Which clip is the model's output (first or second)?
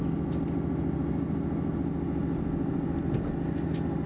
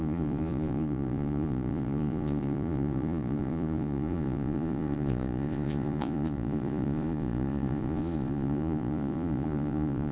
second